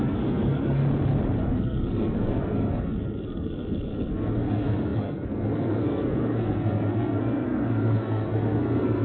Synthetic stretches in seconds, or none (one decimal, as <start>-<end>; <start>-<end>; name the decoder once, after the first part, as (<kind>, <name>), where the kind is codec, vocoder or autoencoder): 0.0-0.8 (codec, SNAC); 1.4-9.0